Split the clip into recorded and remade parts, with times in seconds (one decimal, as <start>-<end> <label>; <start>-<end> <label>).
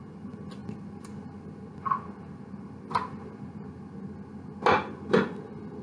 0.0-5.8 recorded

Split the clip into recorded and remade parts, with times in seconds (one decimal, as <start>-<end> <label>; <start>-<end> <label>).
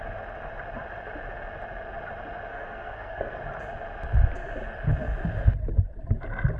0.0-2.5 recorded; 2.5-3.4 remade; 3.4-6.6 recorded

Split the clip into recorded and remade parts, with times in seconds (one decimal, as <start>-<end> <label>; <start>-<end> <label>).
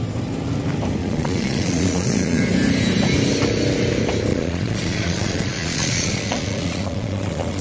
0.0-1.0 recorded; 1.0-2.4 remade; 2.4-4.3 recorded; 4.3-7.6 remade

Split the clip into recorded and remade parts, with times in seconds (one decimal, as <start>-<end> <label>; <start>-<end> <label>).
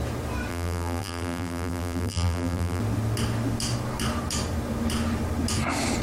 0.0-0.5 recorded; 0.5-2.8 remade; 2.8-6.0 recorded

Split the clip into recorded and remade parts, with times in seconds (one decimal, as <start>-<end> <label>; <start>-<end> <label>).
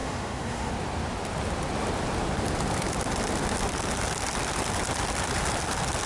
0.0-0.7 remade; 0.7-6.1 recorded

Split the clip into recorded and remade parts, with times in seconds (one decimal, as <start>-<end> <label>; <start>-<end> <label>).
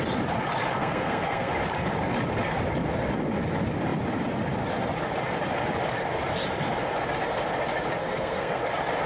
0.0-0.8 recorded; 0.8-1.5 remade; 1.5-8.0 recorded; 8.0-8.6 remade; 8.6-9.1 recorded